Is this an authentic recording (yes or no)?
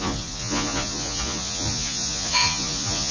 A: no